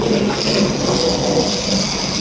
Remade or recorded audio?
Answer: recorded